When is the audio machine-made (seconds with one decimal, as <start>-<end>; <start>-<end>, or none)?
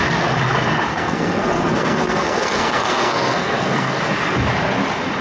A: 0.9-4.0